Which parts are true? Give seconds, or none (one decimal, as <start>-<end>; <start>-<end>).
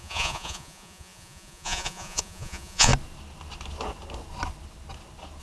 2.9-5.4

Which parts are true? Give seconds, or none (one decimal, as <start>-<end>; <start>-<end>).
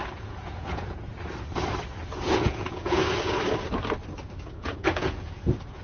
1.1-2.2; 3.0-4.4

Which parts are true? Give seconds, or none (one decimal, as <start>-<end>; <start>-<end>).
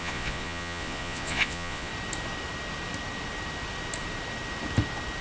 1.9-5.2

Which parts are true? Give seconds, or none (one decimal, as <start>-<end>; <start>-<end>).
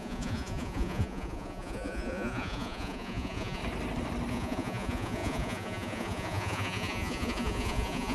3.6-4.3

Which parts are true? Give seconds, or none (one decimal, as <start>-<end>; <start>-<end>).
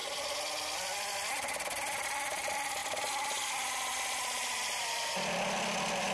0.0-6.1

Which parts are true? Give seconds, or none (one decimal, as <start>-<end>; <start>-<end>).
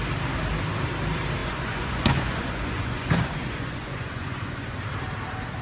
0.0-1.4; 4.8-5.6